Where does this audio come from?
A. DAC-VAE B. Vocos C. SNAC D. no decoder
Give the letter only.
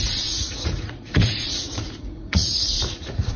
B